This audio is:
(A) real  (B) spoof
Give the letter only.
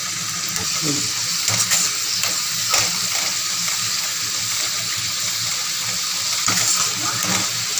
A